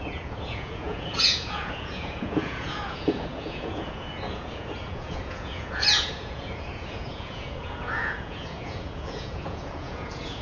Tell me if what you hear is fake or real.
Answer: fake